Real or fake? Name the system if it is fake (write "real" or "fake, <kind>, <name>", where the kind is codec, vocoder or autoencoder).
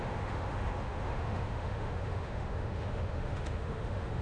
fake, autoencoder, DAC-VAE